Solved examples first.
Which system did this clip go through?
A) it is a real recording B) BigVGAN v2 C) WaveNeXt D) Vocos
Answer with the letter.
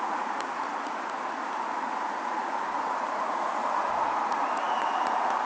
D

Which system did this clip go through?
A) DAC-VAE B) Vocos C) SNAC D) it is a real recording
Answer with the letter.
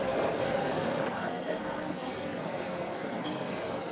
C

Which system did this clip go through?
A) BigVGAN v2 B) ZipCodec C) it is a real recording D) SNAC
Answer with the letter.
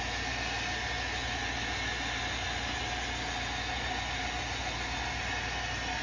C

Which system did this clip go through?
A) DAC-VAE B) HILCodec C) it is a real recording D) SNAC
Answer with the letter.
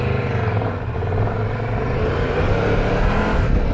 C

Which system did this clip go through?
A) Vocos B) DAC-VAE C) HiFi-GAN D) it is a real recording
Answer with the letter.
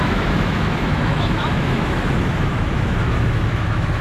B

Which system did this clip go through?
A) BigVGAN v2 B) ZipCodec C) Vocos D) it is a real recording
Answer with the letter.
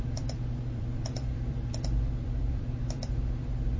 A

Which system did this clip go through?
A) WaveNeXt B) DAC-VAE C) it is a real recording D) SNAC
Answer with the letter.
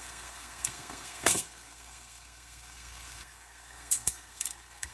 D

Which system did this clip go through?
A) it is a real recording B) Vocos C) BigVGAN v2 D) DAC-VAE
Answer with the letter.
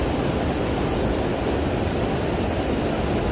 A